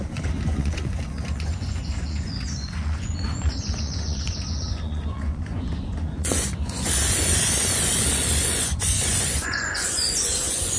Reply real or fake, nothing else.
fake